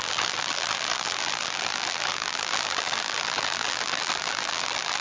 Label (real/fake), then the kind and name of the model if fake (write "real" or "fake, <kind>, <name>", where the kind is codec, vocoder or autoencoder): fake, vocoder, BigVGAN v2